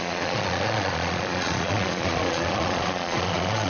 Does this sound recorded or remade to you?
remade